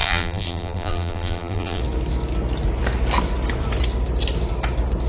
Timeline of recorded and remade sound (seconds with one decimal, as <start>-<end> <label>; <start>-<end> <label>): 0.0-1.8 remade; 1.8-5.1 recorded